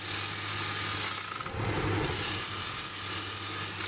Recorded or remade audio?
recorded